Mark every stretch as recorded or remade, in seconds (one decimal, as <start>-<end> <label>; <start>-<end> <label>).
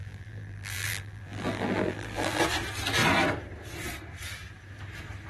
0.0-2.4 remade; 2.4-5.3 recorded